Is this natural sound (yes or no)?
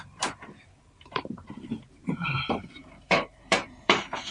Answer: no